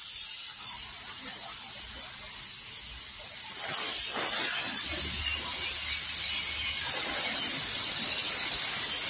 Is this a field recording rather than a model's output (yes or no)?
yes